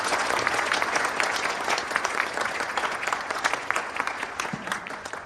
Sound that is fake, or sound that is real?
fake